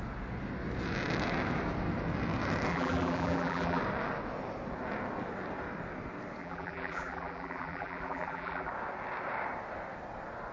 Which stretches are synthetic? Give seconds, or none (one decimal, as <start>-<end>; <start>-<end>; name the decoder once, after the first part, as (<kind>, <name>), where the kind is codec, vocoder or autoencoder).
2.7-3.8 (vocoder, BigVGAN v2); 6.4-8.7